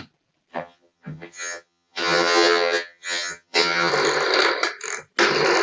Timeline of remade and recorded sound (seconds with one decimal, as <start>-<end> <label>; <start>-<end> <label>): 0.0-0.5 recorded; 0.5-3.9 remade; 3.9-5.6 recorded